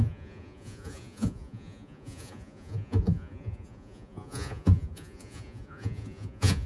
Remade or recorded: remade